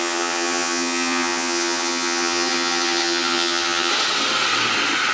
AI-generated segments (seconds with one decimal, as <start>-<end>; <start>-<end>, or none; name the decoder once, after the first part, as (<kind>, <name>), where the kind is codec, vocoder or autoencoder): 0.0-3.9 (vocoder, HiFi-GAN)

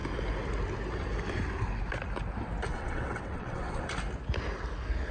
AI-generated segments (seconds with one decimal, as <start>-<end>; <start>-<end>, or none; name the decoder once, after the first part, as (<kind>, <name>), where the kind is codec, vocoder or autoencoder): 2.7-3.8 (vocoder, WaveNeXt)

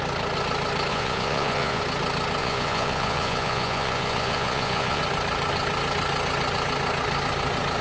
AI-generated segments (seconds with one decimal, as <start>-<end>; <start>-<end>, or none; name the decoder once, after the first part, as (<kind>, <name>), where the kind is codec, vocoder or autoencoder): 0.9-1.8 (vocoder, Vocos); 2.4-5.0